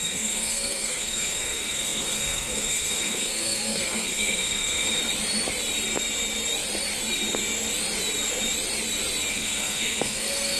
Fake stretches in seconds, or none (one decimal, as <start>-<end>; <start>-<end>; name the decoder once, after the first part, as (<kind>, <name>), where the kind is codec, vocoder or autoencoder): 0.0-5.0 (codec, SNAC); 9.3-10.6